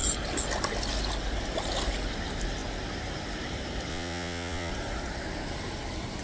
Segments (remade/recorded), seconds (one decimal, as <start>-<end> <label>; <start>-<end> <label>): 0.0-3.9 recorded; 3.9-4.7 remade; 4.7-6.2 recorded